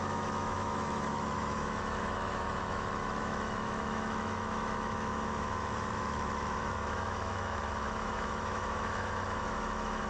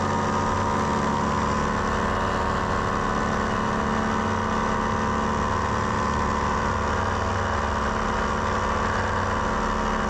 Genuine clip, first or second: second